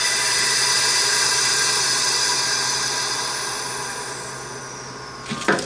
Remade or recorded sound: recorded